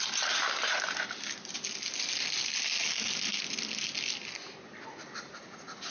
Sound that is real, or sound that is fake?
real